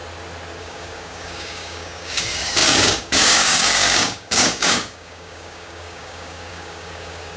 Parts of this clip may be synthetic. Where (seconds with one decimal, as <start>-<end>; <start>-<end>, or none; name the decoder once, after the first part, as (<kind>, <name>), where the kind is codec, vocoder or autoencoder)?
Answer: 0.6-7.4 (codec, DAC)